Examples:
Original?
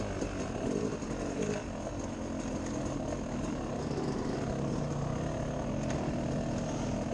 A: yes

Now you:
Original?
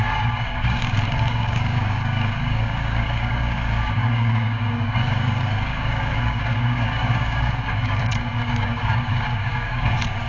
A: no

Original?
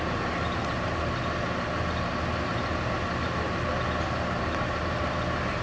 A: yes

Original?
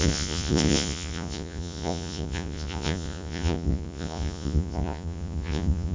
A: no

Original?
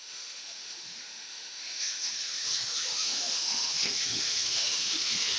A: no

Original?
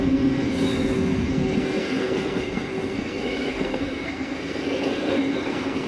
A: no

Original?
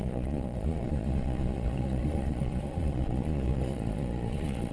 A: no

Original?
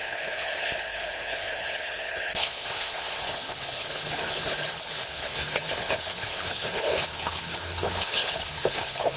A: no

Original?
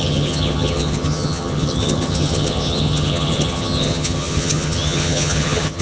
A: no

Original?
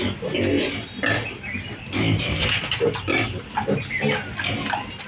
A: yes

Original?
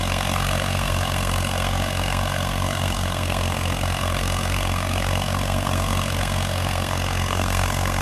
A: no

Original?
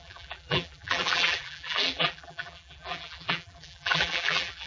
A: no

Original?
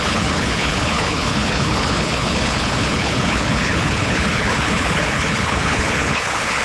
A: no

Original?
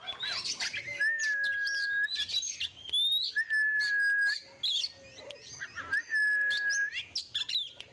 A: yes